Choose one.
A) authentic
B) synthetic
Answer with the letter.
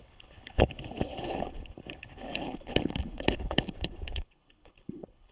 B